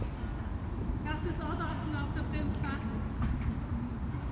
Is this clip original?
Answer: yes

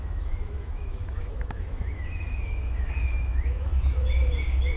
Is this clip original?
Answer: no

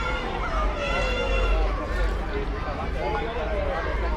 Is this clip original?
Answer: yes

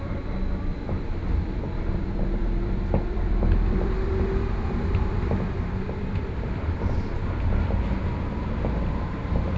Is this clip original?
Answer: no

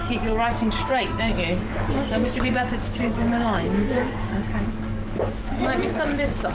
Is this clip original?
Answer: no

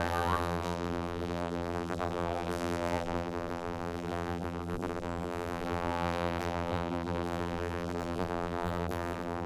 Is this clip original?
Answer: no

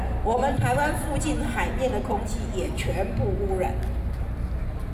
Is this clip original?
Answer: yes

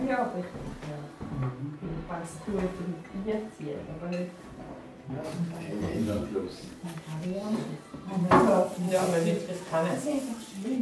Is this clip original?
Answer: yes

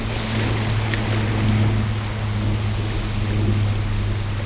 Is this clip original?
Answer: yes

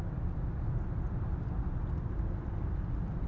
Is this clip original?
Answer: yes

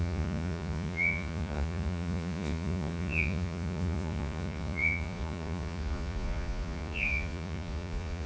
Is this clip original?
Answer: no